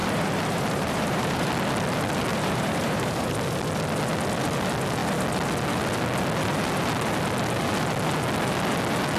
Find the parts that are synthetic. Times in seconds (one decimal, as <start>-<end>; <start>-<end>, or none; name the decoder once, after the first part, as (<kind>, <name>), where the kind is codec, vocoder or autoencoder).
0.0-1.5 (vocoder, BigVGAN v2); 2.3-3.3